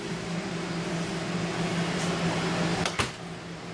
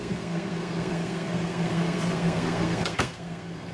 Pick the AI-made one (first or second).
second